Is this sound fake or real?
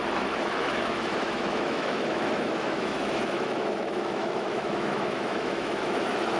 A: fake